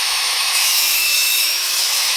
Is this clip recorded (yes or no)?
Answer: no